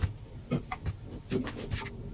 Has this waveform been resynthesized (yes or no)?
no